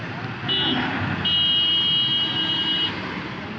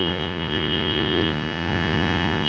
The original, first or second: first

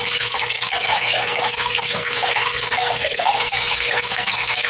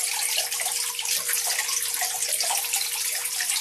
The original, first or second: second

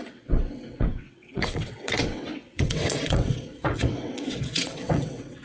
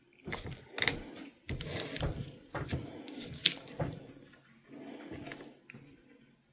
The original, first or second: second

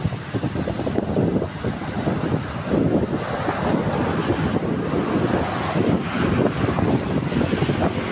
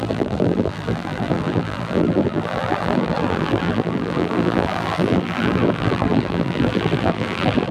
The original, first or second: first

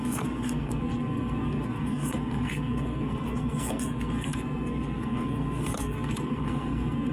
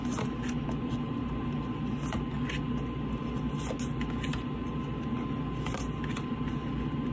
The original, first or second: second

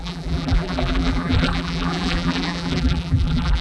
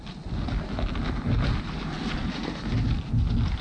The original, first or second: second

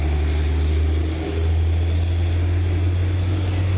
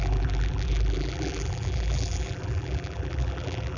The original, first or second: first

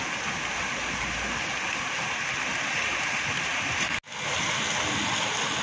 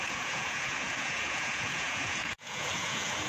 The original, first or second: first